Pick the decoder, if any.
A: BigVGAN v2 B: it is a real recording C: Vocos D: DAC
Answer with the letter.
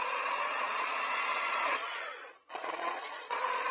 C